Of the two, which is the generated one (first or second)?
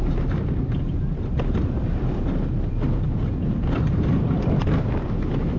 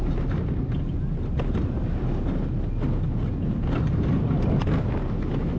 first